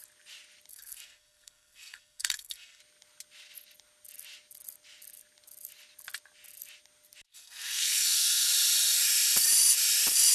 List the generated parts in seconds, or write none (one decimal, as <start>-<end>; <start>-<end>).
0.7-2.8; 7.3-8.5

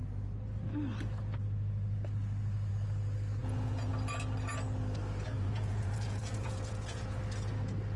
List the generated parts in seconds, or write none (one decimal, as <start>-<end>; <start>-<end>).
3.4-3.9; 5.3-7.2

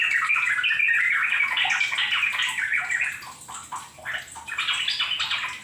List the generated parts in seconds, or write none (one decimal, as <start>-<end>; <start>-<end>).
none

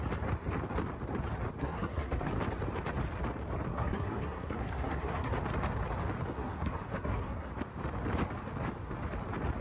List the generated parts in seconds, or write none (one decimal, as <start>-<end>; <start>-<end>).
1.6-2.3; 3.7-5.3; 6.3-7.5

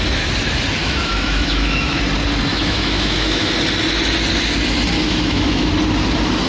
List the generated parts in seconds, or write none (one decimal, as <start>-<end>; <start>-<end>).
0.8-2.0; 2.5-3.5; 5.0-5.7

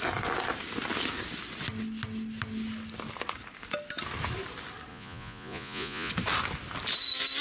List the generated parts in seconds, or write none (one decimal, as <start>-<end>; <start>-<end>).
4.9-6.1